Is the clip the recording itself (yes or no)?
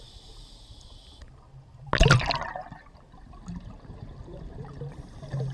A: yes